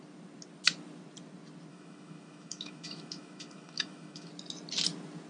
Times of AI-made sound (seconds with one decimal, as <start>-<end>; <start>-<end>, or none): 1.7-4.3